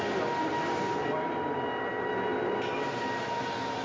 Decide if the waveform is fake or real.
real